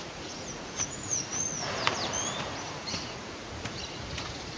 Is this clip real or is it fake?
fake